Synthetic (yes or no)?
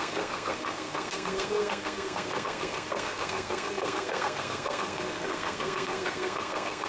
yes